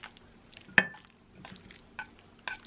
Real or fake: real